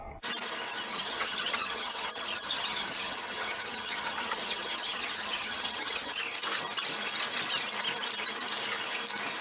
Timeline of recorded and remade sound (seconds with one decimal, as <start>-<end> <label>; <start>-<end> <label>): 0.0-0.9 recorded; 0.9-6.2 remade; 6.2-9.4 recorded